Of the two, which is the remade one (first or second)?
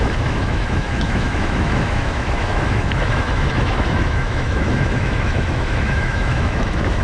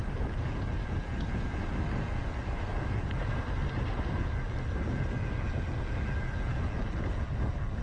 first